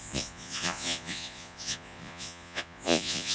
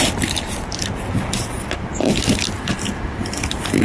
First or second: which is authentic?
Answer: second